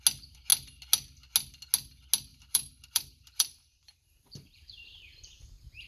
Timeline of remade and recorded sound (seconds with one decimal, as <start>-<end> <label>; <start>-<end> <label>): 0.0-2.3 recorded; 2.3-5.9 remade